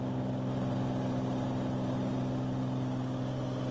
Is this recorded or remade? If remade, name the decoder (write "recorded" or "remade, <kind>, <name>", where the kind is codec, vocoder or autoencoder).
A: recorded